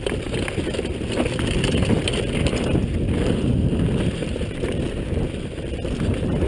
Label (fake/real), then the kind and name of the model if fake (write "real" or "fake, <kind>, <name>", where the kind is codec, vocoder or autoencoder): real